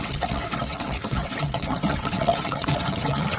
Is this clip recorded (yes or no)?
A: no